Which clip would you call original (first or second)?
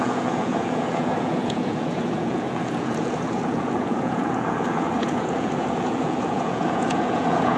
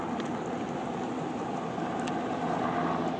second